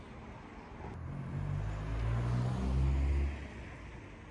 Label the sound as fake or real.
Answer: real